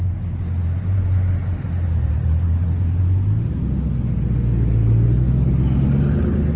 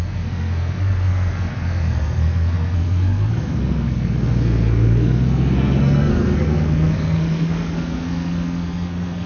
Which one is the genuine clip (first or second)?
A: first